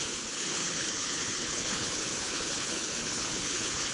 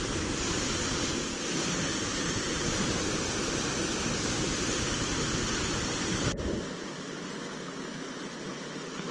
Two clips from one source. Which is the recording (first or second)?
second